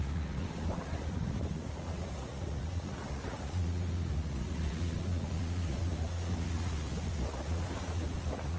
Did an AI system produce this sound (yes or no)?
yes